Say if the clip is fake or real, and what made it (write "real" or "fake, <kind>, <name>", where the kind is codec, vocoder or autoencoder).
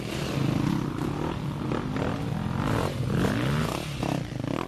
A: real